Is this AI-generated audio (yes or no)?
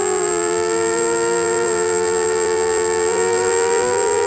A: yes